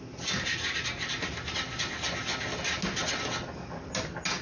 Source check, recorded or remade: recorded